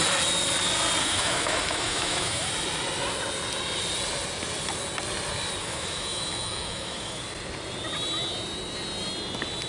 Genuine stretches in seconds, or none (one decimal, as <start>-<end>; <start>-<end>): 0.0-1.0; 2.5-5.6; 7.2-9.7